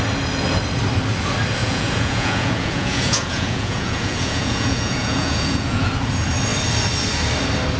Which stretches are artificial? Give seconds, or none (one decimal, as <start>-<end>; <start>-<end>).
1.6-5.9

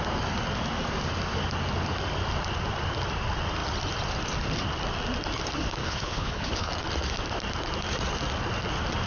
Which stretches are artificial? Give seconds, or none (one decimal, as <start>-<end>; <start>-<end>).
5.8-6.7

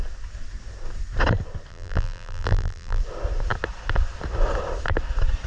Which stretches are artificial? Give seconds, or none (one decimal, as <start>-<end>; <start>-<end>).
1.7-3.0

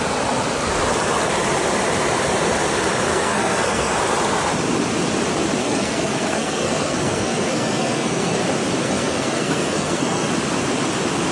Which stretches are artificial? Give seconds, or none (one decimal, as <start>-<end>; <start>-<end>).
3.1-4.0; 5.6-8.4; 8.8-10.3

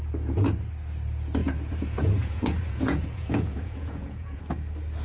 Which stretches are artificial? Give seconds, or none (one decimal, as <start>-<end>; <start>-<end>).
1.4-4.4

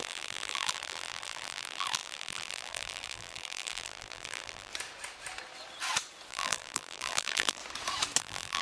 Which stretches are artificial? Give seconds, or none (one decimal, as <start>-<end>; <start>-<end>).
0.0-4.7; 6.3-7.6; 8.2-8.6

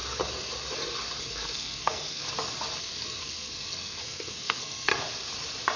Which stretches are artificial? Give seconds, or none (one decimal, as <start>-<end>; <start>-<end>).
1.2-2.2; 2.8-4.9